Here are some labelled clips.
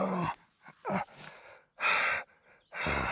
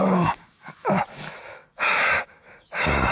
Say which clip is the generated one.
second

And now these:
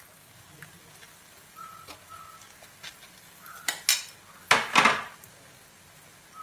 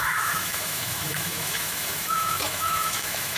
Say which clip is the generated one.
second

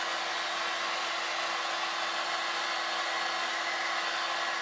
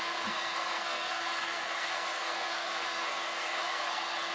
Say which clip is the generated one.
second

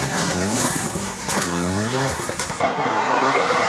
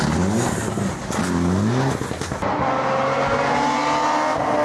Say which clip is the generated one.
first